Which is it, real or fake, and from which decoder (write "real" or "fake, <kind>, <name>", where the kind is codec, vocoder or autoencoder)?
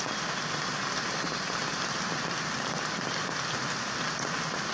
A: real